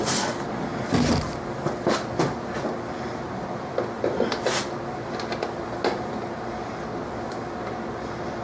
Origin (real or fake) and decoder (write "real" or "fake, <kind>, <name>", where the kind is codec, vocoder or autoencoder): real